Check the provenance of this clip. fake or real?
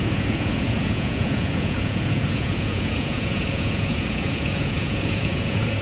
fake